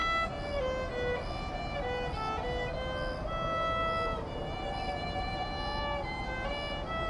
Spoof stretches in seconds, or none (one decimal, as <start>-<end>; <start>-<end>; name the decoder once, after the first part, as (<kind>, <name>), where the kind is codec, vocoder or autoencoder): none